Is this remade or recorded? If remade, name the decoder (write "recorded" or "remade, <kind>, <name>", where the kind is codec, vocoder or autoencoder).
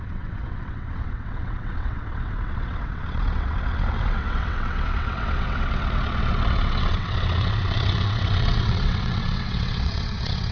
remade, vocoder, WaveNeXt